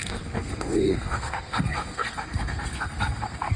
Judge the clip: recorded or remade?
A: remade